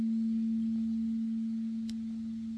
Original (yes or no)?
yes